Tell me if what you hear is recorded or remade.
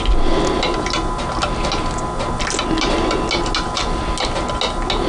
recorded